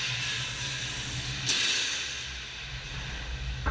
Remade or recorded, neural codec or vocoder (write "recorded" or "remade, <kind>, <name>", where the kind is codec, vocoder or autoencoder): recorded